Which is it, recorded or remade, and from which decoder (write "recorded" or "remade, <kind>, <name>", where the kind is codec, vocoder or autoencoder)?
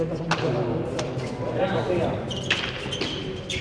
recorded